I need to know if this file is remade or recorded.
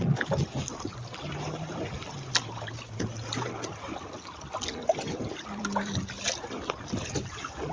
recorded